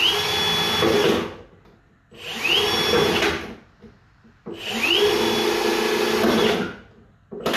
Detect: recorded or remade recorded